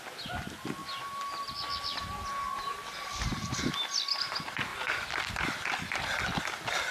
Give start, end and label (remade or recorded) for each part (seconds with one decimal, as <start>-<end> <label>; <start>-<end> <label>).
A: 0.0-6.9 recorded